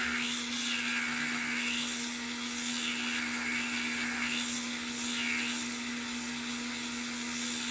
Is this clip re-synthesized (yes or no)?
no